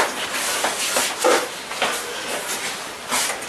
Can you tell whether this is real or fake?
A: real